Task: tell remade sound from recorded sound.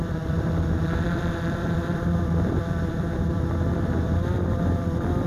remade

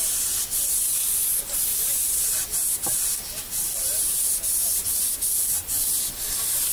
recorded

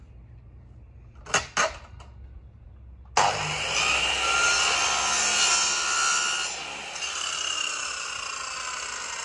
recorded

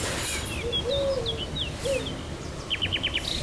recorded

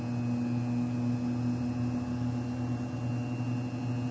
recorded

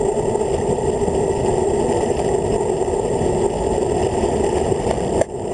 recorded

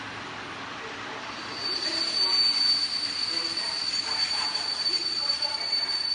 recorded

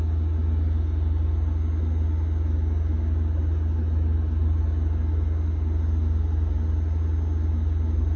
recorded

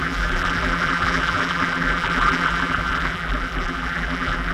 remade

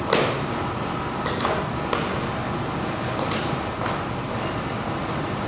remade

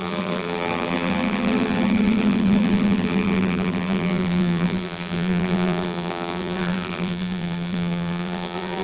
remade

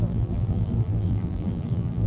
remade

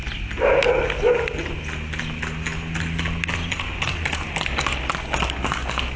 recorded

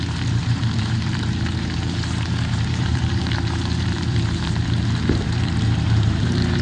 remade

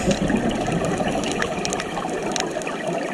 recorded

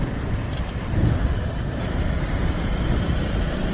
remade